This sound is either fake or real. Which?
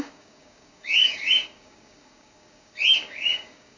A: fake